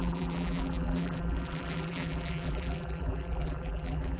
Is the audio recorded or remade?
remade